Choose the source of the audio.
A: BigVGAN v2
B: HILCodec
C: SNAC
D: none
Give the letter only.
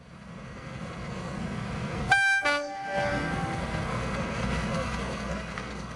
C